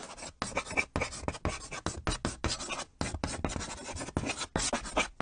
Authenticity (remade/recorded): recorded